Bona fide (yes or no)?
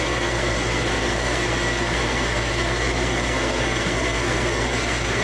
no